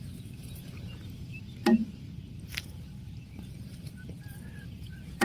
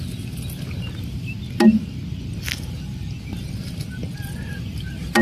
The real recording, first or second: second